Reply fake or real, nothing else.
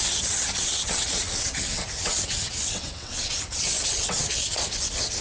fake